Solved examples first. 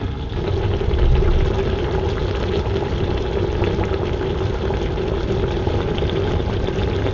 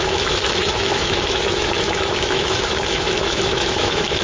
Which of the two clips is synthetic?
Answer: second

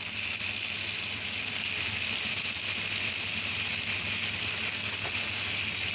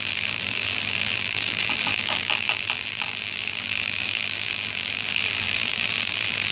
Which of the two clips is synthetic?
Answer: second